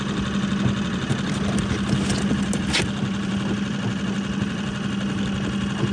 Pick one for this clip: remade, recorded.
recorded